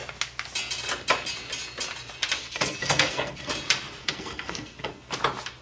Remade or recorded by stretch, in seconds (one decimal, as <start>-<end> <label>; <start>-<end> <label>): 0.0-2.4 recorded; 2.4-3.5 remade; 3.5-4.0 recorded; 4.0-5.1 remade; 5.1-5.6 recorded